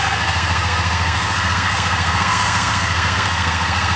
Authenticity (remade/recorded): remade